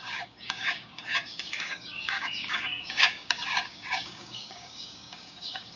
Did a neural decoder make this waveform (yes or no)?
yes